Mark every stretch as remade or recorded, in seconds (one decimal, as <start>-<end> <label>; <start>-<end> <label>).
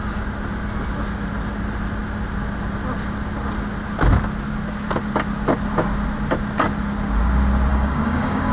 0.0-7.7 recorded; 7.7-8.5 remade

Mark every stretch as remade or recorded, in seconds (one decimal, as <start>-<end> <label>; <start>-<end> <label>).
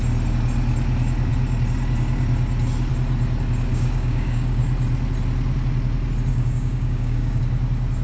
0.0-3.7 recorded; 3.7-4.6 remade; 4.6-6.3 recorded; 6.3-7.4 remade; 7.4-8.0 recorded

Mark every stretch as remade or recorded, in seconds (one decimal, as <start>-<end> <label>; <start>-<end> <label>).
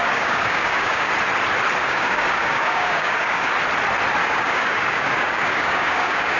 0.0-1.1 remade; 1.1-1.8 recorded; 1.8-3.5 remade; 3.5-4.2 recorded; 4.2-6.4 remade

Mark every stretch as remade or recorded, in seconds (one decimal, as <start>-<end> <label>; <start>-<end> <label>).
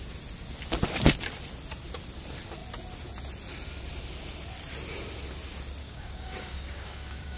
0.0-5.8 recorded; 5.8-7.4 remade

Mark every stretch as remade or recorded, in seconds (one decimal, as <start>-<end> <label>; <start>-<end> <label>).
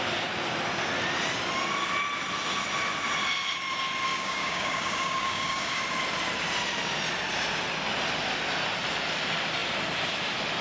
0.0-4.1 recorded; 4.1-5.8 remade; 5.8-10.6 recorded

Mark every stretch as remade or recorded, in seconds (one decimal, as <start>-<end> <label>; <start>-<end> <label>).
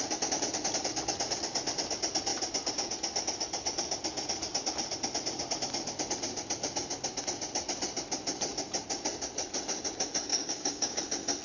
0.0-10.3 recorded; 10.3-11.0 remade; 11.0-11.4 recorded